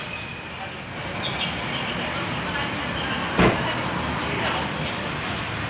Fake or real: real